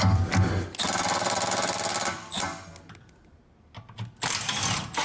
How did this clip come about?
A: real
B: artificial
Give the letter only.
A